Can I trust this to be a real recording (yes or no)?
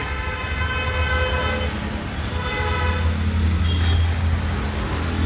yes